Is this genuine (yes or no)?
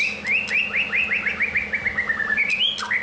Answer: yes